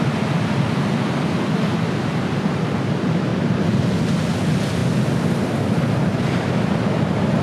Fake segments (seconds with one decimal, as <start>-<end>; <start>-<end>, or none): none